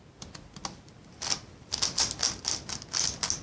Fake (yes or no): no